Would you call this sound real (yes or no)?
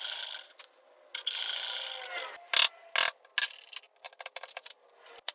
yes